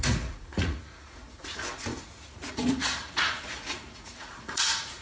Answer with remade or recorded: remade